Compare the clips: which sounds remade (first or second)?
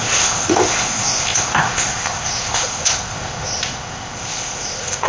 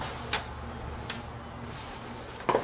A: first